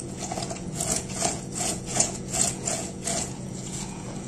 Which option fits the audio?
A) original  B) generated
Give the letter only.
B